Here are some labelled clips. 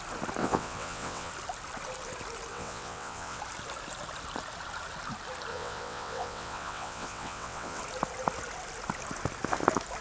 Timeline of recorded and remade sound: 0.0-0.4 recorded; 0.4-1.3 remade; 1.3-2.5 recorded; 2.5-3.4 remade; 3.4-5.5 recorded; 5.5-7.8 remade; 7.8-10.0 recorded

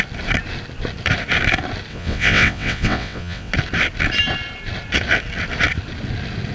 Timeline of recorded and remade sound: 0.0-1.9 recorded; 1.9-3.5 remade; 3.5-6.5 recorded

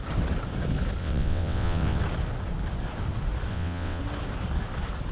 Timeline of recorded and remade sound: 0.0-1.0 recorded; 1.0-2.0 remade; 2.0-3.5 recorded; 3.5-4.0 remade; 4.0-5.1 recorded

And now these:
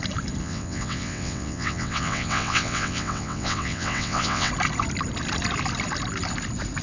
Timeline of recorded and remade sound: 0.0-0.4 recorded; 0.4-4.5 remade; 4.5-6.8 recorded